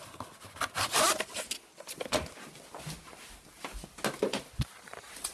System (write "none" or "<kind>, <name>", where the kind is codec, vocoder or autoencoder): none